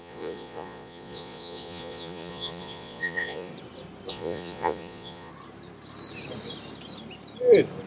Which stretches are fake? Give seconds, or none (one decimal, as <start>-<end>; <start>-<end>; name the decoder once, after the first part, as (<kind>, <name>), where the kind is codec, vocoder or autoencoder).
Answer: 0.0-3.5 (vocoder, Vocos); 4.1-5.3